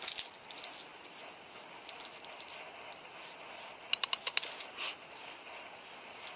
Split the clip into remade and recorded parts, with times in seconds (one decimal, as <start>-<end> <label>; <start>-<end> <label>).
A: 0.0-6.4 recorded

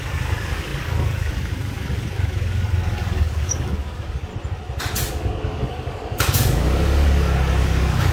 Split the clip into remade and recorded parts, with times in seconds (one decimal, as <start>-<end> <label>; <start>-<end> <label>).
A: 0.0-4.3 remade; 4.3-5.1 recorded; 5.1-8.1 remade

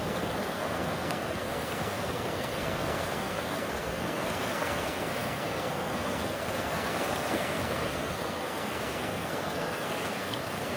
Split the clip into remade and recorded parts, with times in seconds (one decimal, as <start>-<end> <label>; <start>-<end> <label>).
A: 0.0-10.8 remade

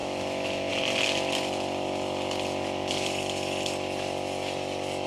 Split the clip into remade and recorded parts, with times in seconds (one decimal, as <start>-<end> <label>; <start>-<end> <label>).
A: 0.0-0.7 remade; 0.7-5.1 recorded